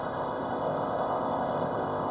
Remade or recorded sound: remade